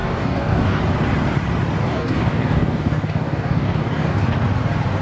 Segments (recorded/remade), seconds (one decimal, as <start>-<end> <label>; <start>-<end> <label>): 0.0-0.8 remade; 0.8-1.8 recorded; 1.8-4.3 remade; 4.3-5.0 recorded